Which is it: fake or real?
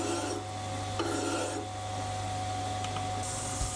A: real